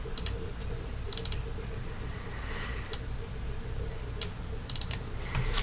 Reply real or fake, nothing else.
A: real